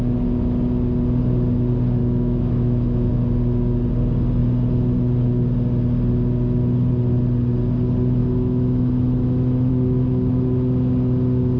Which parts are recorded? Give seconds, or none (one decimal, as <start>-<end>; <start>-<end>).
0.0-2.0; 3.1-8.2; 9.7-11.6